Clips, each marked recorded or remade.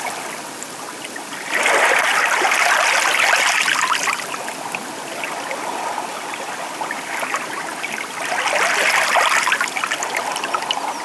recorded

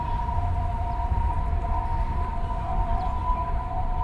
remade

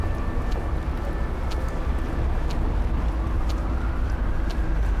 recorded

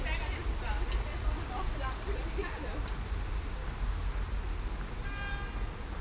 recorded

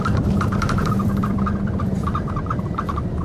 remade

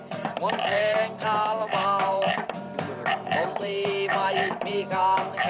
remade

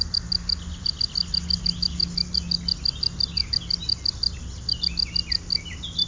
recorded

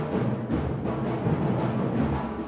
recorded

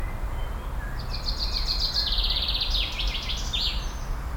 recorded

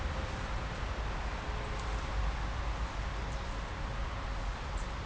recorded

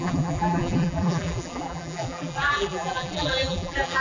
remade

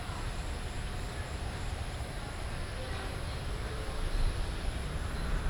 recorded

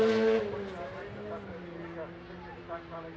recorded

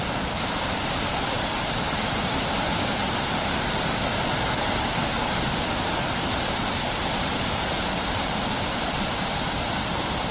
recorded